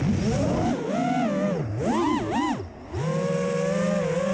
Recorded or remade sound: recorded